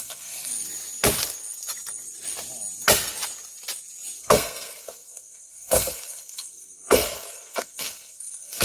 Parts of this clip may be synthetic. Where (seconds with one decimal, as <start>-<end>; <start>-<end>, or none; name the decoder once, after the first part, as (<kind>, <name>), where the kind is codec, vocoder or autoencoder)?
0.0-0.5 (codec, SNAC); 4.2-8.6